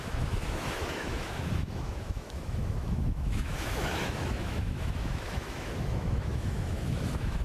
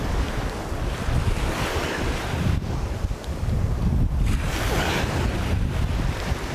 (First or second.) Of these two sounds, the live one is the second